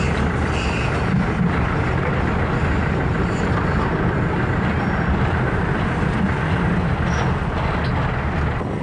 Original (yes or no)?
yes